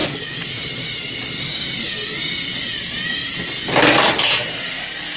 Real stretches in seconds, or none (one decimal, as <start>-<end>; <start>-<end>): 0.0-5.2